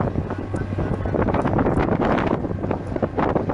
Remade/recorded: recorded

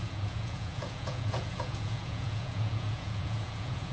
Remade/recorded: remade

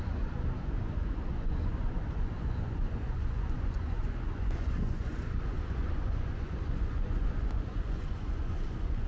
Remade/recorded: remade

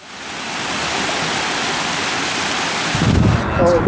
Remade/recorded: recorded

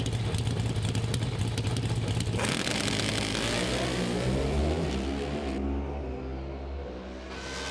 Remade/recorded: recorded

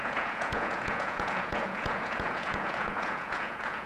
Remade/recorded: remade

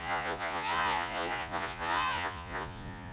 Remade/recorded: remade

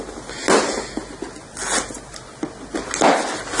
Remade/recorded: recorded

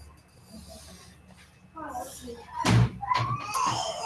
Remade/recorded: recorded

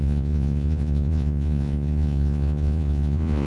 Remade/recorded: remade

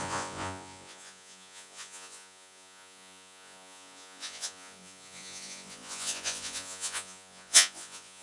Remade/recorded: remade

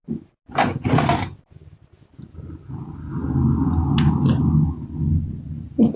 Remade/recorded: recorded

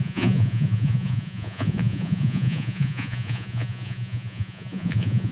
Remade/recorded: remade